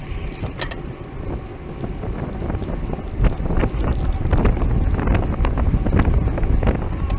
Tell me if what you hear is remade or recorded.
recorded